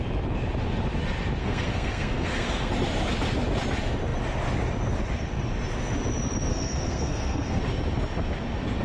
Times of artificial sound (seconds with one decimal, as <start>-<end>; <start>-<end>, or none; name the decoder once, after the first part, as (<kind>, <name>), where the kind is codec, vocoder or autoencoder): 1.4-2.7 (codec, SNAC); 6.5-7.6